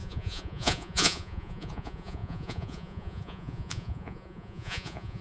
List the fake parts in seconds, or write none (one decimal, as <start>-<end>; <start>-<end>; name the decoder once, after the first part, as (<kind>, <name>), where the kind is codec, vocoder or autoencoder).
0.0-5.2 (vocoder, Vocos)